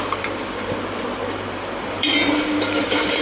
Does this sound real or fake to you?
fake